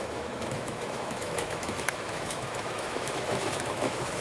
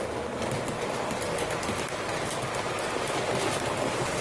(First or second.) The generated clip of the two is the first